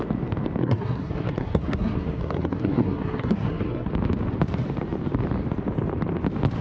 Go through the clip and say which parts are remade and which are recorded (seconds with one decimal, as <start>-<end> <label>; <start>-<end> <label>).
0.0-0.6 recorded; 0.6-3.9 remade; 3.9-6.6 recorded